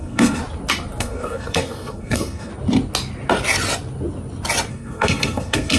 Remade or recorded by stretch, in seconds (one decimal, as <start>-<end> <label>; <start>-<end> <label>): 0.0-0.4 remade; 0.4-1.0 recorded; 1.0-2.5 remade; 2.5-4.7 recorded; 4.7-5.8 remade